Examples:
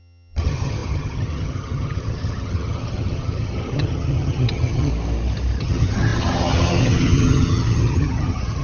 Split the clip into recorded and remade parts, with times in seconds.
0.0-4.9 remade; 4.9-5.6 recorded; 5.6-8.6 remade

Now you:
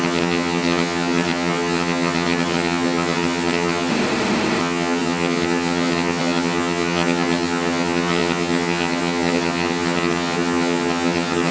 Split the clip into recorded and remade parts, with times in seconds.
0.0-3.9 remade; 3.9-4.6 recorded; 4.6-11.5 remade

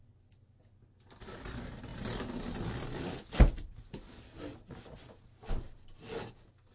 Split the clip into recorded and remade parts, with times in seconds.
0.0-6.7 recorded

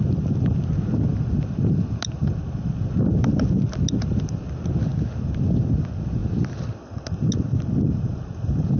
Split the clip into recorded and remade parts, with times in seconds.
0.0-8.8 recorded

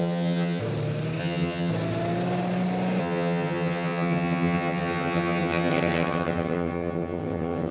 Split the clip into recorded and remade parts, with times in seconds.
0.0-0.6 remade; 0.6-1.2 recorded; 1.2-1.7 remade; 1.7-3.0 recorded; 3.0-7.7 remade

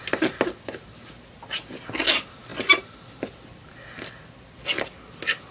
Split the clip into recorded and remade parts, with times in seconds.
0.0-5.5 recorded

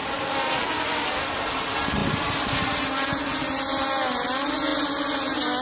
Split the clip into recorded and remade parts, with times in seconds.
0.0-5.6 recorded